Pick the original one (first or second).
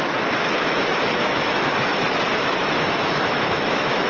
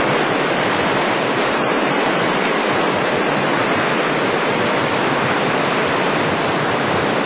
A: second